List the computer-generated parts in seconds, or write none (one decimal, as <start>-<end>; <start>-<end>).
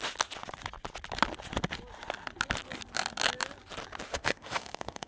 4.1-5.1